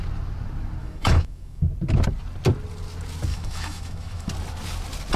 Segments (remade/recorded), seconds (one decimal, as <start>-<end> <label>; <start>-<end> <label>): 0.0-0.8 recorded; 0.8-1.6 remade; 1.6-3.3 recorded; 3.3-4.3 remade; 4.3-5.2 recorded